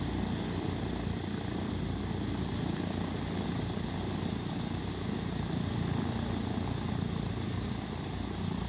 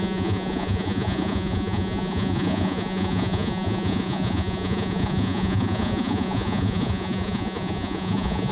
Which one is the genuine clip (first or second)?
first